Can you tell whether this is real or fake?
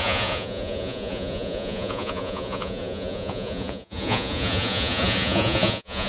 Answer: fake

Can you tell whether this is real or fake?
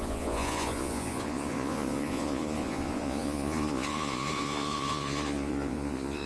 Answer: fake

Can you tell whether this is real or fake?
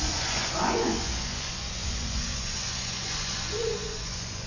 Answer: fake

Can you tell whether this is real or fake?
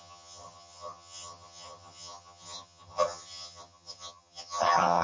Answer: fake